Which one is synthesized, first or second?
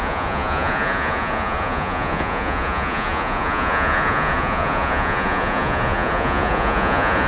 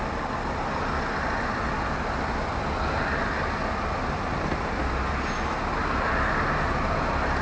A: first